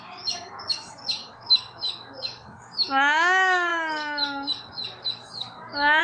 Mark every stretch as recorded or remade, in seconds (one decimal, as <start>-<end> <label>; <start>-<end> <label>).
0.0-6.0 remade